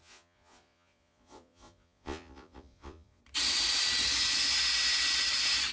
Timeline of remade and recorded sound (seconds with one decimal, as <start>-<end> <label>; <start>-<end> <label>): 0.0-3.2 remade; 3.2-5.7 recorded